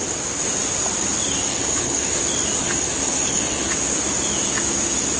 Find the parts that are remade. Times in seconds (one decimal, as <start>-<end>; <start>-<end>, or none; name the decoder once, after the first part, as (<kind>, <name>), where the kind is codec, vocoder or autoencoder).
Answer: 1.5-2.2 (codec, HILCodec); 2.6-3.7